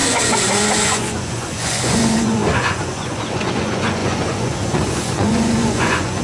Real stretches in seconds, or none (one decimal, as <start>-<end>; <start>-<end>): none